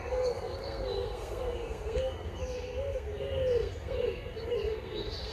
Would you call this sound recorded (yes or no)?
no